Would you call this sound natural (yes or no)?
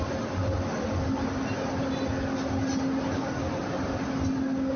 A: yes